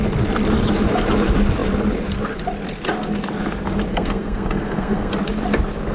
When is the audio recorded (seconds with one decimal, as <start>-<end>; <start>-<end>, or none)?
0.0-3.9; 5.1-5.9